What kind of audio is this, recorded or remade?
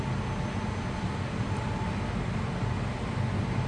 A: remade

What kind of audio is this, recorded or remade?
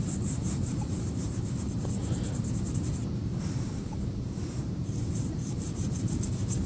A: remade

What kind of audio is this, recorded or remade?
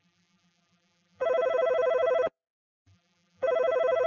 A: remade